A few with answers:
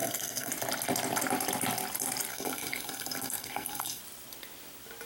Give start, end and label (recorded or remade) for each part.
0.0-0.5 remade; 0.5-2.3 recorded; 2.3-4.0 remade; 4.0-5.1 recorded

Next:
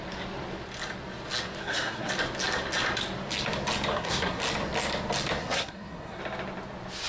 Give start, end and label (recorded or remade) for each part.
0.0-1.6 recorded; 1.6-2.1 remade; 2.1-3.9 recorded; 3.9-4.4 remade; 4.4-5.4 recorded; 5.4-6.2 remade; 6.2-7.1 recorded

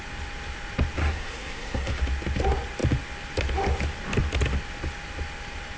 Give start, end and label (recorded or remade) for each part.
0.0-1.0 recorded; 1.0-2.0 remade; 2.0-5.8 recorded